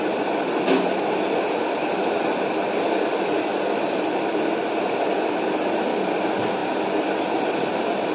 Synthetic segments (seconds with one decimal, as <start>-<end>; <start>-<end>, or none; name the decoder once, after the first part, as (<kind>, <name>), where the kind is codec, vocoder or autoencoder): none